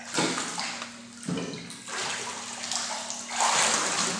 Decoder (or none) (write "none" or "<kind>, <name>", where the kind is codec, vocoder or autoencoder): none